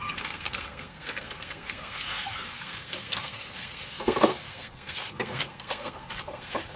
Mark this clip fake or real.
fake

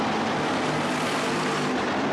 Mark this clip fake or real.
real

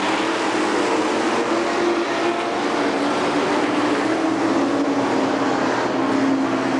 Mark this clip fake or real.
real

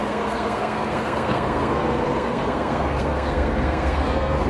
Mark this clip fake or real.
fake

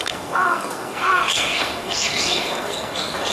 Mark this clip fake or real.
fake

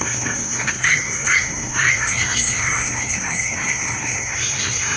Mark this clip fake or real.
fake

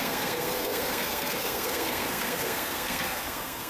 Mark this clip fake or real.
fake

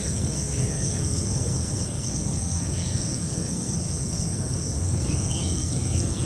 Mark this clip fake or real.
fake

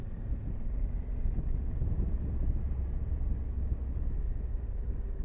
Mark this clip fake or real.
real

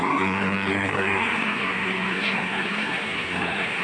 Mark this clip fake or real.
fake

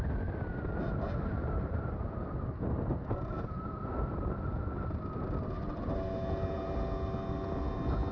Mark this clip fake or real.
real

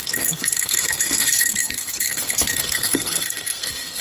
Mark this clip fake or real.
fake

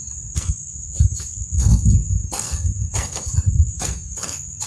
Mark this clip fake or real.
fake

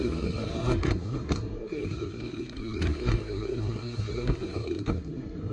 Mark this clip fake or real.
fake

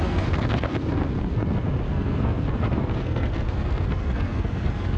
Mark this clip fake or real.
fake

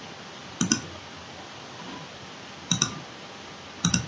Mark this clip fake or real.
real